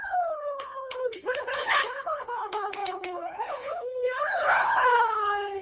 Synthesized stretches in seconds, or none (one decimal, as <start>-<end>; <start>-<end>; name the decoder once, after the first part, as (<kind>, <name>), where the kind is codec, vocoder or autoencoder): 0.0-5.6 (codec, HILCodec)